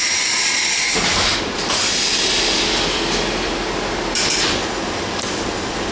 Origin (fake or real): real